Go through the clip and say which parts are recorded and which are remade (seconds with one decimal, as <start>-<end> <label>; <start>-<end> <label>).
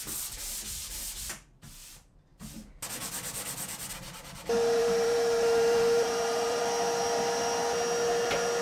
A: 0.0-4.8 recorded; 4.8-6.6 remade; 6.6-8.6 recorded